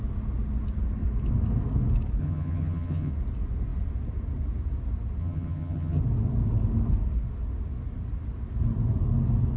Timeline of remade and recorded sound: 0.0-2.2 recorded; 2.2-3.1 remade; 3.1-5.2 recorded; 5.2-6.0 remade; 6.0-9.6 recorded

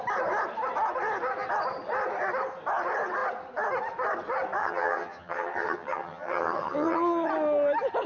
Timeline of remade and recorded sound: 0.0-4.6 recorded; 4.6-7.3 remade; 7.3-8.1 recorded